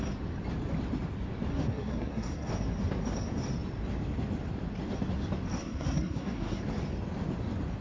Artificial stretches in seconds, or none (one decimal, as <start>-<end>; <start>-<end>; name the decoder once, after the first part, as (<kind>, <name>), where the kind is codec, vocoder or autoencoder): 1.5-2.5 (codec, SNAC); 5.6-6.6